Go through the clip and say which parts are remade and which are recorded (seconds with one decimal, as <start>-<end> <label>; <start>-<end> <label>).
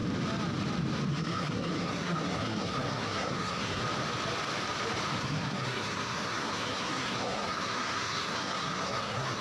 0.0-1.1 recorded; 1.1-3.8 remade; 3.8-5.2 recorded; 5.2-9.4 remade